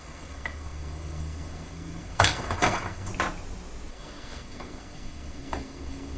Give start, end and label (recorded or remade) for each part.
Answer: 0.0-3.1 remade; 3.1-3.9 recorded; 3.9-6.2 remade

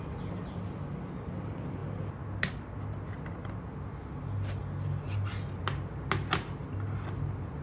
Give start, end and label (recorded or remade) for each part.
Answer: 0.0-7.6 recorded

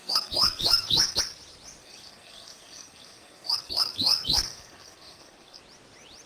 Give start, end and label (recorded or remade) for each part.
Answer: 0.0-1.2 remade; 1.2-1.8 recorded; 1.8-5.6 remade; 5.6-6.3 recorded

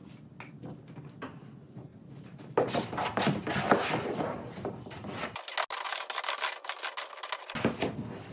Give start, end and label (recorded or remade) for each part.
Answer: 0.0-8.3 recorded

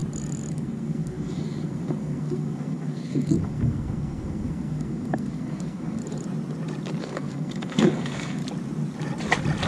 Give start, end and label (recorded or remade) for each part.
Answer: 0.0-0.5 recorded; 0.5-6.0 remade; 6.0-7.0 recorded; 7.0-8.4 remade; 8.4-9.7 recorded

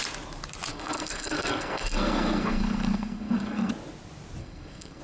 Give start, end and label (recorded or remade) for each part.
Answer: 0.0-0.7 recorded; 0.7-3.7 remade; 3.7-4.4 recorded; 4.4-5.0 remade

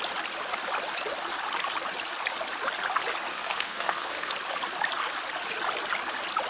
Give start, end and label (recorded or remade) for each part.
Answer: 0.0-3.3 recorded; 3.3-4.3 remade; 4.3-6.5 recorded